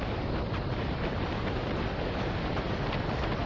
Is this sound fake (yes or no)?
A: no